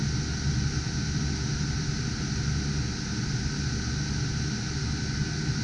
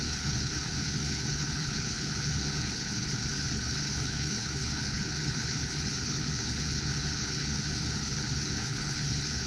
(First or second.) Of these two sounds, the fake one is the second